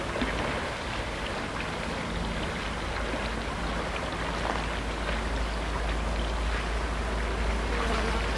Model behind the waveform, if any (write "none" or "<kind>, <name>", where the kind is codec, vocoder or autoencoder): none